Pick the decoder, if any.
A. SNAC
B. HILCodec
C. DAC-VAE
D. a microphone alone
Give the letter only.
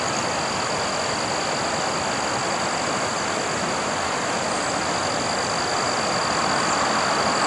D